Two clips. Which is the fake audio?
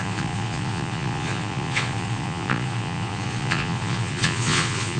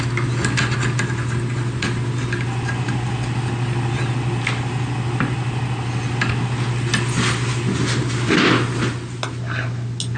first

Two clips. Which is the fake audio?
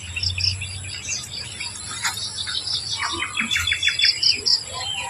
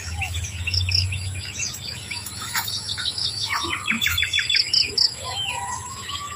second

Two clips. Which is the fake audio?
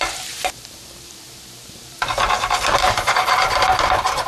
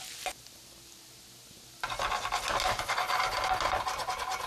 first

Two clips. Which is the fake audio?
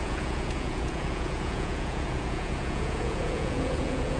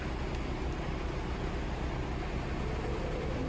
first